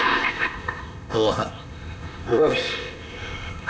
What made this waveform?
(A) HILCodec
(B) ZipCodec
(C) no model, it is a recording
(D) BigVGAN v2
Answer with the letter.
B